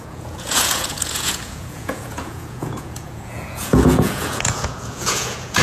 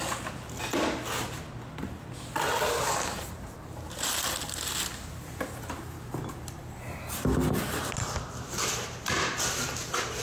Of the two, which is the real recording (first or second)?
second